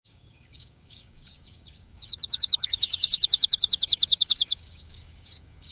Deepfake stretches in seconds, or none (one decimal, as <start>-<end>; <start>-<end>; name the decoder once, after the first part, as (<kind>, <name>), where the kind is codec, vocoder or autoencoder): 0.0-5.7 (codec, DAC)

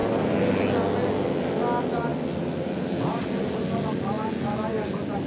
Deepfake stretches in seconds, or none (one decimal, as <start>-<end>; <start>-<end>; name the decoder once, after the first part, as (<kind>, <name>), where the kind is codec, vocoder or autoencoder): none